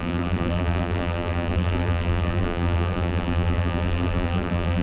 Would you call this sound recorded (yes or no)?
no